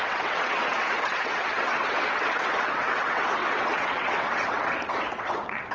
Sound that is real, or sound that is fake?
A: fake